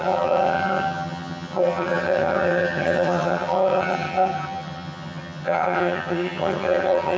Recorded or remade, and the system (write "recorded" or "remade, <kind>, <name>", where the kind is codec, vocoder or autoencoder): remade, vocoder, HiFi-GAN